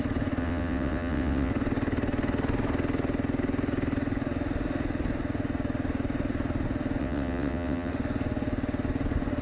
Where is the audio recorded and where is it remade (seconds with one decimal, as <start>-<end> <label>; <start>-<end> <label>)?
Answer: 0.0-0.4 recorded; 0.4-1.5 remade; 1.5-7.0 recorded; 7.0-7.9 remade; 7.9-9.4 recorded